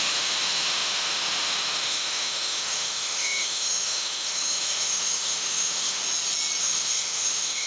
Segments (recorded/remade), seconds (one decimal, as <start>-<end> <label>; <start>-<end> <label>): 0.0-6.0 remade; 6.0-6.6 recorded; 6.6-7.7 remade